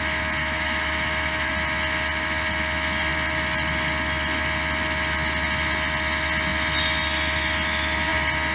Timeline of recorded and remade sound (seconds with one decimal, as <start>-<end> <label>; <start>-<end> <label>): 0.0-0.4 recorded; 0.4-1.5 remade; 1.5-8.5 recorded